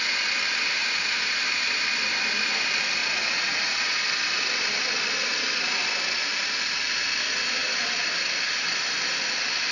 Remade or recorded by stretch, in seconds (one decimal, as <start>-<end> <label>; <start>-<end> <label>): 0.0-0.8 recorded; 0.8-1.4 remade; 1.4-3.0 recorded; 3.0-4.0 remade; 4.0-9.7 recorded